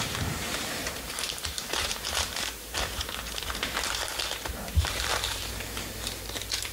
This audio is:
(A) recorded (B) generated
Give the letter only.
B